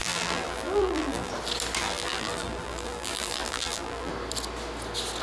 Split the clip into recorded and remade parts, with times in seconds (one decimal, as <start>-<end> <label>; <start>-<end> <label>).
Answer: 0.0-1.3 remade; 1.3-1.8 recorded; 1.8-4.1 remade; 4.1-5.2 recorded